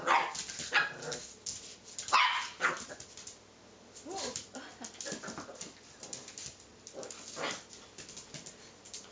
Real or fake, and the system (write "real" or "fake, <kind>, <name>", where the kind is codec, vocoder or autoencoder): real